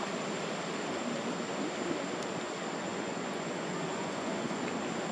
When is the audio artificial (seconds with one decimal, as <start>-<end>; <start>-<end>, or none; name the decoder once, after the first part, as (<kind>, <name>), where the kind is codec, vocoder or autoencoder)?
2.9-4.6 (vocoder, Vocos)